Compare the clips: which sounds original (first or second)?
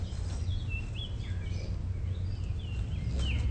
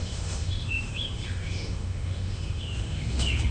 first